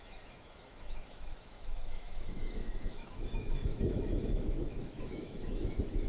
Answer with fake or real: fake